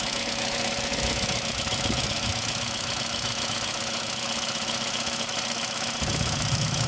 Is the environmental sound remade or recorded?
remade